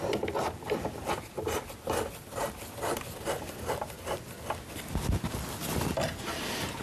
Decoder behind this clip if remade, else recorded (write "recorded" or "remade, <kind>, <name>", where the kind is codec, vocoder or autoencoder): recorded